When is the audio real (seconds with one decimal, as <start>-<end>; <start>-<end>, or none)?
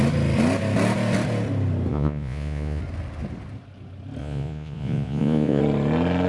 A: 0.0-1.9; 2.8-4.2; 5.6-6.3